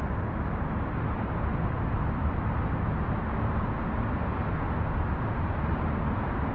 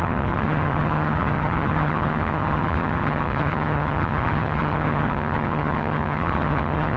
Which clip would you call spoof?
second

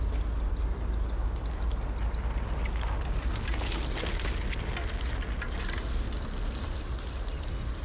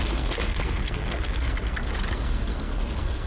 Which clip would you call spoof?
second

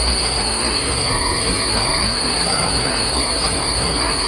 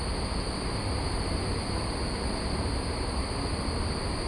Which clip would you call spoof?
first